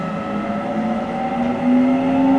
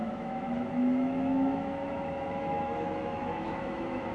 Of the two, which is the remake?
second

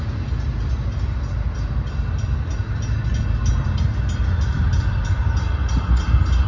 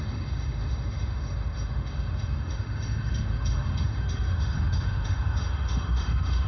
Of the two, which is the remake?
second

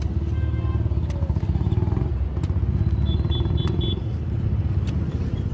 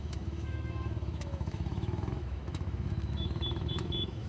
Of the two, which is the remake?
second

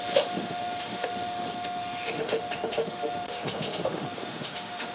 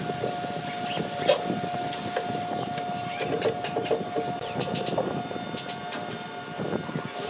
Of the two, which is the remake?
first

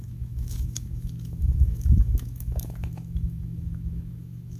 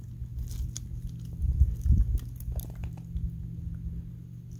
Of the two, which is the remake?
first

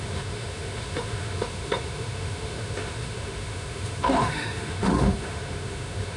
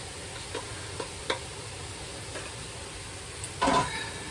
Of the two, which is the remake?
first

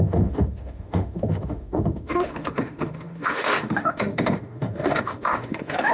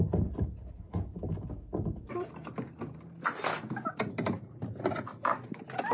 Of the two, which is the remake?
first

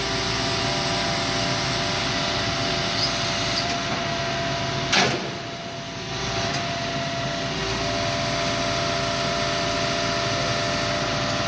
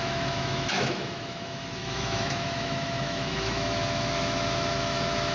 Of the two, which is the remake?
second